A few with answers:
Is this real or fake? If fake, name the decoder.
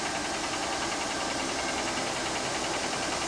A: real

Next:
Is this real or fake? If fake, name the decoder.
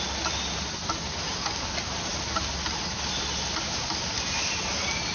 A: real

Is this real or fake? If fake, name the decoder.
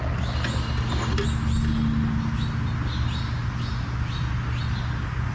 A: real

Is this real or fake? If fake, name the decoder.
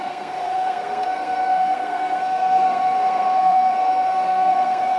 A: fake, codec, SNAC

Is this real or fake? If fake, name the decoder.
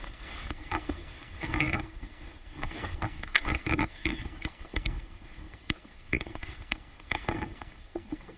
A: fake, codec, SNAC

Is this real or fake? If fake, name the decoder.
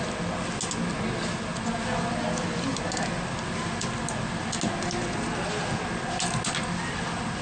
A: real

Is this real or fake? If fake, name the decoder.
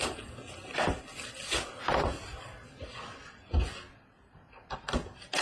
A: real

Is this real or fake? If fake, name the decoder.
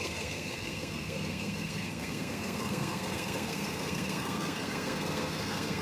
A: fake, codec, SNAC